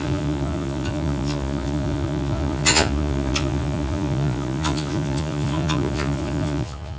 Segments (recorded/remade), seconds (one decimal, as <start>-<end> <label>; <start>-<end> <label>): 0.0-7.0 remade